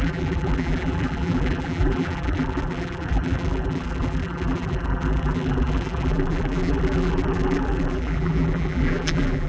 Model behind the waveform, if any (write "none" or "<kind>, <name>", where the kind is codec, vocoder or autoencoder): vocoder, BigVGAN v2